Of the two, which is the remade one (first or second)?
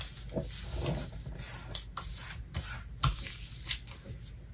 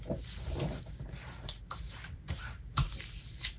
second